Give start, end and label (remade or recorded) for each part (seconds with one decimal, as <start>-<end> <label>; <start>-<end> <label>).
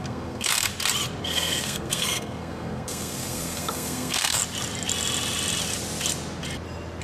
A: 0.0-0.7 remade; 0.7-1.2 recorded; 1.2-4.4 remade; 4.4-7.0 recorded